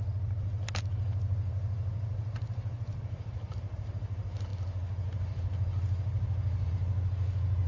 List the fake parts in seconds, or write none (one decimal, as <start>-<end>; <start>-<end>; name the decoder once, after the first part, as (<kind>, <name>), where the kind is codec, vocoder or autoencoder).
none